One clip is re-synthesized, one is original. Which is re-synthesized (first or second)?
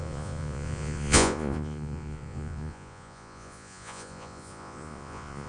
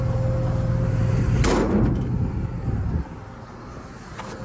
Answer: first